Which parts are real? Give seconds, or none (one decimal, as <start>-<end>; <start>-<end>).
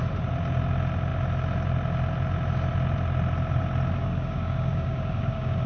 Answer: 0.0-4.0